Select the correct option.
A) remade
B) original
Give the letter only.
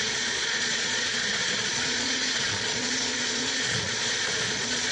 A